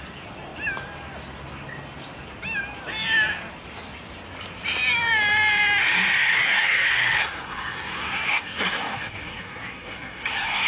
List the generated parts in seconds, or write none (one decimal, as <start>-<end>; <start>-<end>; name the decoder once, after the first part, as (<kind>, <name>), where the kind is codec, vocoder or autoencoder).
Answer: 5.8-10.7 (codec, SNAC)